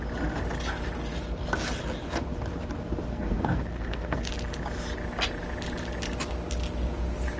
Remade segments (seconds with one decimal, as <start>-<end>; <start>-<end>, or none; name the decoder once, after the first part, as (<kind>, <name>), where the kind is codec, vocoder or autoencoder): 3.1-4.3 (codec, SNAC)